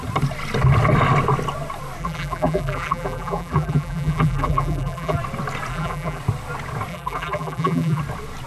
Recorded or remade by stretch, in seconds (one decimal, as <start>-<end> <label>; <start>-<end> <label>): 0.0-2.0 recorded; 2.0-5.2 remade; 5.2-5.7 recorded; 5.7-6.2 remade; 6.2-6.9 recorded; 6.9-8.0 remade; 8.0-8.5 recorded